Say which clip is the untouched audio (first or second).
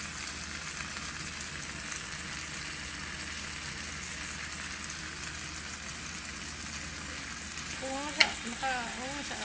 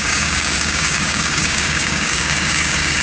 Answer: first